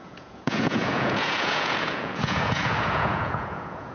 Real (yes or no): no